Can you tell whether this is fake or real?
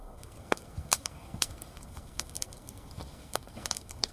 fake